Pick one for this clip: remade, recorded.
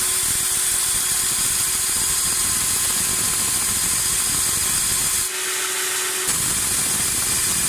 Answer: recorded